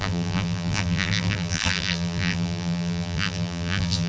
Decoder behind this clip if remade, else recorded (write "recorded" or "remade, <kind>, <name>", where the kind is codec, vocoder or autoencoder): remade, vocoder, BigVGAN v2